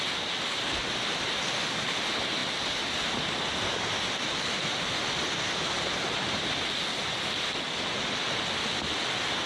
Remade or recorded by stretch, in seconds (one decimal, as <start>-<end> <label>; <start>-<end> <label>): 0.0-9.5 recorded

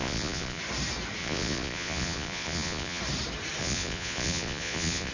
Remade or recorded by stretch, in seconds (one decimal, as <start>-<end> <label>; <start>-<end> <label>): 0.0-0.6 remade; 0.6-1.2 recorded; 1.2-3.0 remade; 3.0-3.6 recorded; 3.6-5.1 remade

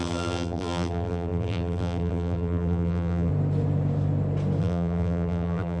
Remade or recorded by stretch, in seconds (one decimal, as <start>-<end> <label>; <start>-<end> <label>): 0.0-3.3 remade; 3.3-4.6 recorded; 4.6-5.8 remade

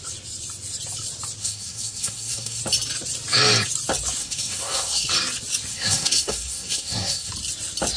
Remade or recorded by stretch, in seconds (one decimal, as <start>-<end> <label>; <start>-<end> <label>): 0.0-1.4 recorded; 1.4-2.6 remade; 2.6-4.2 recorded; 4.2-5.1 remade; 5.1-5.7 recorded; 5.7-7.3 remade; 7.3-8.0 recorded

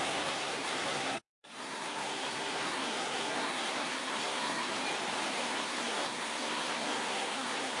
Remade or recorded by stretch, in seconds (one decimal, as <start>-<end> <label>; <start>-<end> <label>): 0.0-4.8 remade; 4.8-5.3 recorded; 5.3-7.8 remade